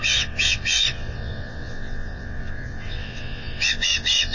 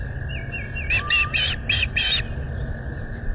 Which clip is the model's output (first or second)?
first